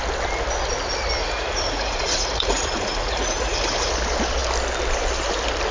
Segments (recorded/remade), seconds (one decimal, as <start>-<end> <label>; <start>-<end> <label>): 0.0-1.2 recorded; 1.2-3.9 remade; 3.9-5.7 recorded